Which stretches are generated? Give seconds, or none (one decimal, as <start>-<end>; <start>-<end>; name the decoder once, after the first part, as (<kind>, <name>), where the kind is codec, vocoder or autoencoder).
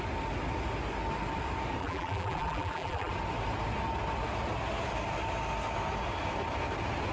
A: 1.8-3.1 (vocoder, BigVGAN v2)